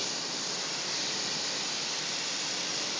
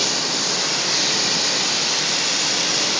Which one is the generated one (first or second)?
first